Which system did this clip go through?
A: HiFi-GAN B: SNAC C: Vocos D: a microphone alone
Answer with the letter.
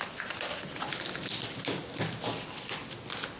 D